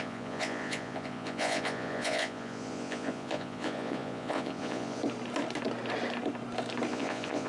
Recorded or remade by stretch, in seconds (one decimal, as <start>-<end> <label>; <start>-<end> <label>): 0.0-5.0 remade; 5.0-6.9 recorded; 6.9-7.5 remade